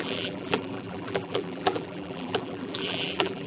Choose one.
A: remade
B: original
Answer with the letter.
A